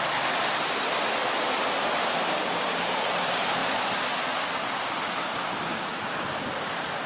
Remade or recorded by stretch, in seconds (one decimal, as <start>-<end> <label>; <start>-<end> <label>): 0.0-1.2 remade; 1.2-1.7 recorded; 1.7-7.1 remade